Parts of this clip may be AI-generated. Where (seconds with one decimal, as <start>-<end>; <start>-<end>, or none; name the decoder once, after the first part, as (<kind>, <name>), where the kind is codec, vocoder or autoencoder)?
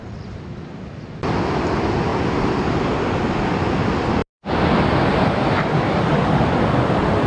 none